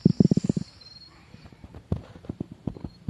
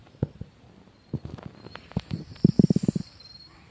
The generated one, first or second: first